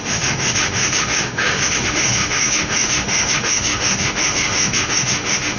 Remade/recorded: remade